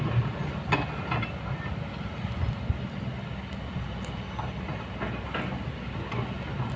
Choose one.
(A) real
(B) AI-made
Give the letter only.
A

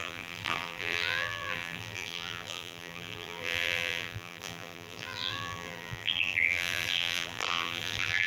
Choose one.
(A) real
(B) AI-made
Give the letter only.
B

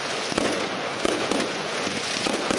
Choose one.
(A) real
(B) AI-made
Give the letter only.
B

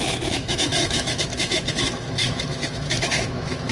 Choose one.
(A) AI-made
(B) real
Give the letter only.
A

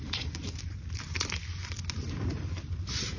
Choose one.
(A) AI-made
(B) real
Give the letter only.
A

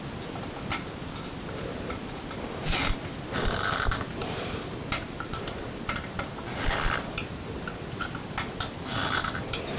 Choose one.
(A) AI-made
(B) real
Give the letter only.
A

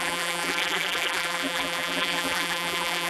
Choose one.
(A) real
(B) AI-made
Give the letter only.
B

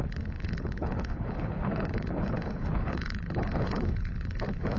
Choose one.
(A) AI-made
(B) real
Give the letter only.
A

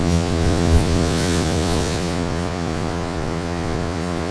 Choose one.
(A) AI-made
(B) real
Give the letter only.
A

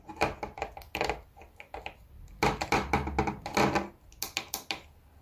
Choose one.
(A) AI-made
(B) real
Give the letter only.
B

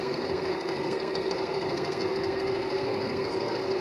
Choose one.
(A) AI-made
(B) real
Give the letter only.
A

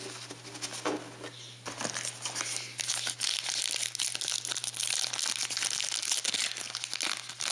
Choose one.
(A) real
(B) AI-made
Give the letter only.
A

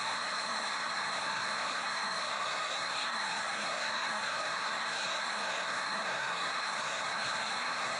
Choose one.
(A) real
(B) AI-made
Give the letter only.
B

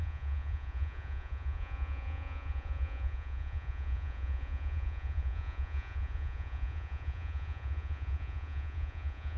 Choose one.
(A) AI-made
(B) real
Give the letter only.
A